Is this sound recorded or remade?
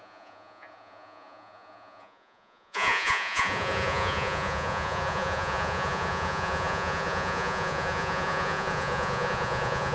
remade